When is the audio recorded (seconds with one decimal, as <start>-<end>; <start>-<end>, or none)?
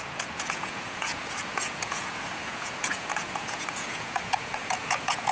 none